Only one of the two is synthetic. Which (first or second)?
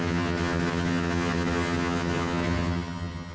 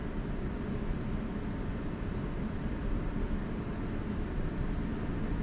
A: first